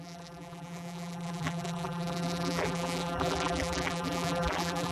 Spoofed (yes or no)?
yes